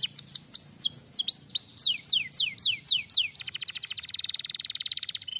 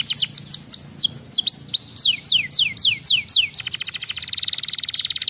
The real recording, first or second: second